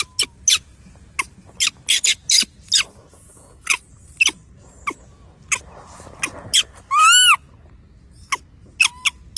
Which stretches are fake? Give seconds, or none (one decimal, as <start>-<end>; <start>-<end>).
3.0-3.8